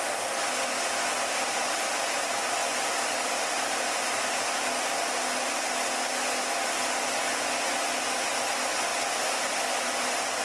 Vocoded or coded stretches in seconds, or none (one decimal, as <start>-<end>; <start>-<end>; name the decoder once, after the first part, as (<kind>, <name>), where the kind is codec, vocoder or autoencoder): 2.6-3.8 (vocoder, BigVGAN v2); 8.9-10.4